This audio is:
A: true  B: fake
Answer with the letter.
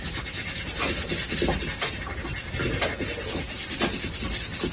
A